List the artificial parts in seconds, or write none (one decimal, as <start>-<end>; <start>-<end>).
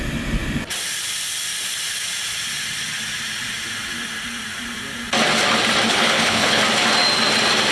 5.9-6.6